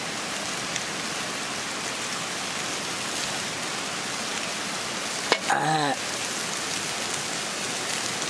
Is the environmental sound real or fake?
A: real